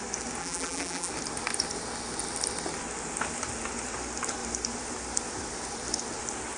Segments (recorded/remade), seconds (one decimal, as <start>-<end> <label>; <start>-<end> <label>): 0.0-0.4 recorded; 0.4-1.1 remade; 1.1-6.6 recorded